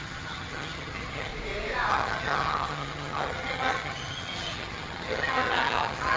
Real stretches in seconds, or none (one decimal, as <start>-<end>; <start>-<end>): 1.3-1.9